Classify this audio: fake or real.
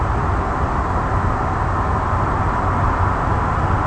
real